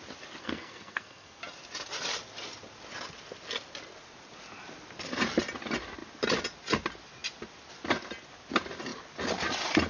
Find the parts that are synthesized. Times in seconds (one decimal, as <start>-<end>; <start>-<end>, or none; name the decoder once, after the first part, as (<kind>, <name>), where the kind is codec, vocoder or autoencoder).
0.4-1.4 (codec, SNAC)